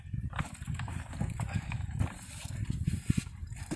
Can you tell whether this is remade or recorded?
recorded